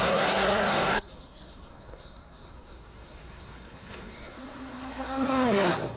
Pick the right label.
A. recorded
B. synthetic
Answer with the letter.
B